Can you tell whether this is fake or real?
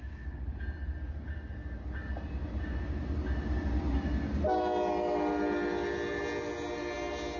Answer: real